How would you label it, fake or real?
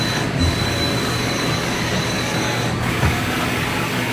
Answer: fake